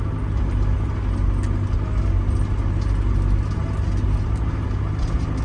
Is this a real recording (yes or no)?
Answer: yes